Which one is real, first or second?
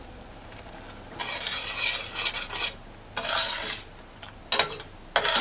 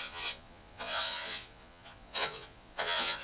first